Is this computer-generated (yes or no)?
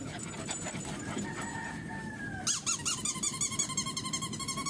no